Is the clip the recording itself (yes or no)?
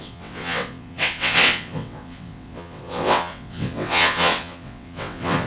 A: no